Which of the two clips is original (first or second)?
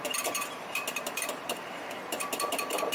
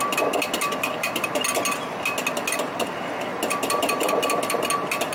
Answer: second